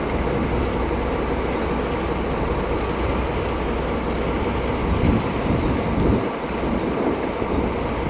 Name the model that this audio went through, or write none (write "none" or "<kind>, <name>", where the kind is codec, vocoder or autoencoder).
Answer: none